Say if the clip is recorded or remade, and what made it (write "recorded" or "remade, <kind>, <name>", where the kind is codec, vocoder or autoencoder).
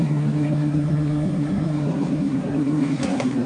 remade, codec, SNAC